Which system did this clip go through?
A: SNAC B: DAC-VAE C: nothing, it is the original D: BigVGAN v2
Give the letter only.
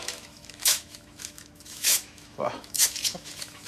B